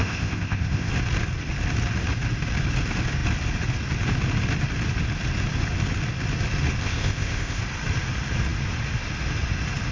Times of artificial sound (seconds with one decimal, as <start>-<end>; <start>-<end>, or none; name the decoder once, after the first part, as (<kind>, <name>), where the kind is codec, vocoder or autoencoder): 0.0-0.9 (codec, ZipCodec); 6.8-7.6

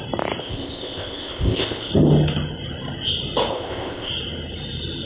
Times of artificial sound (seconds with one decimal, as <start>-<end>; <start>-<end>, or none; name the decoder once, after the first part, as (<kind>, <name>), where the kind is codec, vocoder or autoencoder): 0.4-1.9 (codec, ZipCodec); 3.5-4.1